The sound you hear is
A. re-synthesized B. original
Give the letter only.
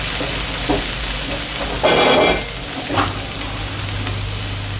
B